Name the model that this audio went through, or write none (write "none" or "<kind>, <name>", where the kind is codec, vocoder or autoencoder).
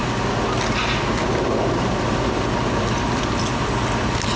none